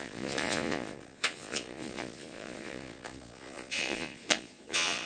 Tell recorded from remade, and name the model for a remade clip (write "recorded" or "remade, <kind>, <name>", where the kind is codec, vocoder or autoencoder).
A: remade, vocoder, Vocos